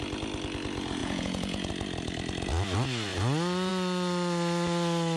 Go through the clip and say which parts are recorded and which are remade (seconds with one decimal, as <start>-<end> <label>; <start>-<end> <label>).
0.0-1.0 recorded; 1.0-1.7 remade; 1.7-5.2 recorded